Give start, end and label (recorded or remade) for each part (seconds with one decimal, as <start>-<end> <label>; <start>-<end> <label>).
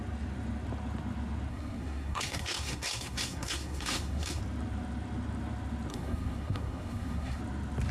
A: 0.0-1.5 recorded; 1.5-4.4 remade; 4.4-5.9 recorded; 5.9-7.4 remade; 7.4-7.9 recorded